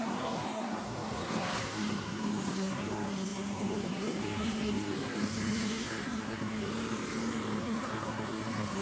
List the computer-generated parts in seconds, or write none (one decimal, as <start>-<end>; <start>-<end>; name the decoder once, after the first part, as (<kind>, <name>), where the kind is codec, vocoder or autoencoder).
0.0-6.7 (codec, SNAC); 7.6-8.8